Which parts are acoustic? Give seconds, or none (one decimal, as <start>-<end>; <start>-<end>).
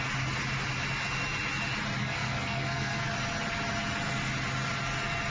0.0-2.0; 3.1-5.3